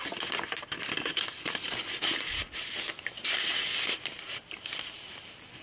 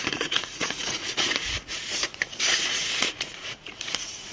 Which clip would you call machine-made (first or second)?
second